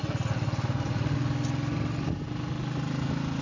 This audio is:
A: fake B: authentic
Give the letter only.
B